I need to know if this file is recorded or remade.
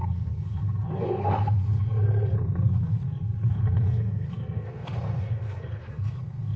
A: remade